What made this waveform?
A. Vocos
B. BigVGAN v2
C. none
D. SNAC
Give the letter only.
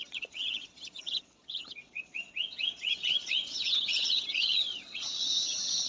A